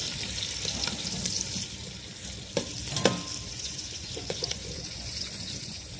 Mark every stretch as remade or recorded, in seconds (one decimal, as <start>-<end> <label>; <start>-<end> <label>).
0.0-3.5 recorded; 3.5-6.0 remade